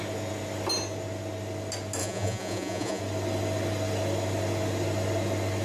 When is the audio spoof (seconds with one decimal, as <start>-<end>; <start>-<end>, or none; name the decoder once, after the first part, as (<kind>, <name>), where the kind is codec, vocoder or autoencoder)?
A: 2.0-3.0 (vocoder, Vocos)